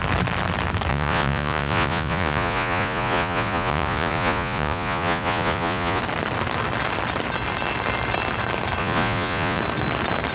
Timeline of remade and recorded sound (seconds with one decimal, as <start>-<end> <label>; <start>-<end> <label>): 0.0-0.9 recorded; 0.9-6.0 remade; 6.0-8.8 recorded; 8.8-9.6 remade; 9.6-10.3 recorded